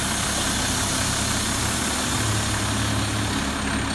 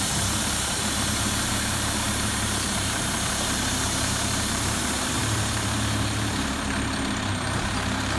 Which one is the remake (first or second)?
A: second